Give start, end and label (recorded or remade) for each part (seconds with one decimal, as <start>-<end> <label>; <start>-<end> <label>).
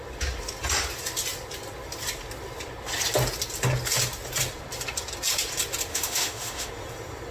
0.0-5.9 recorded; 5.9-6.7 remade; 6.7-7.3 recorded